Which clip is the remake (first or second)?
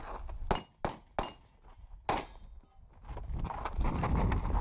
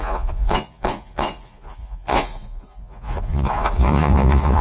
second